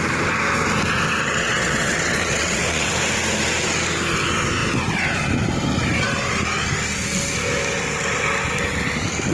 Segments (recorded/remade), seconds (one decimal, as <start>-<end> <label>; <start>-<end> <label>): 0.0-1.2 recorded; 1.2-2.9 remade; 2.9-9.3 recorded